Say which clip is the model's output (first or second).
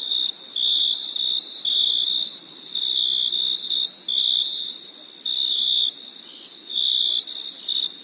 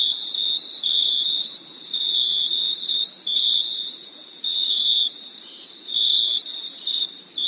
second